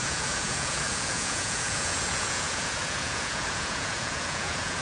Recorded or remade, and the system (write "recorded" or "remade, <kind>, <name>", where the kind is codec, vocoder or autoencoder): remade, vocoder, Vocos